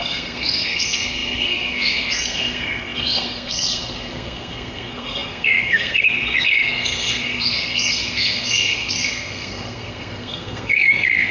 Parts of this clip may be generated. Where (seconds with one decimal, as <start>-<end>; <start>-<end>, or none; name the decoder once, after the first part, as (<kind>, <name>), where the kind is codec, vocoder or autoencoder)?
0.0-11.3 (codec, SNAC)